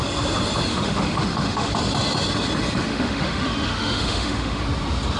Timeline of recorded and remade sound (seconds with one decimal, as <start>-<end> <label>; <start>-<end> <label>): 0.0-0.7 recorded; 0.7-1.7 remade; 1.7-2.9 recorded; 2.9-4.6 remade; 4.6-5.2 recorded